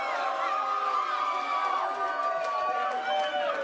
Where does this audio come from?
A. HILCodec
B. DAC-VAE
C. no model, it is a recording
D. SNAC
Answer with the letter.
C